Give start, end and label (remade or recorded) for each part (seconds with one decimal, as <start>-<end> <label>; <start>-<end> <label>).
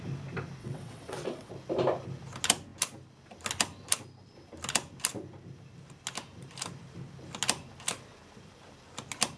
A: 0.0-0.6 recorded; 0.6-1.5 remade; 1.5-9.4 recorded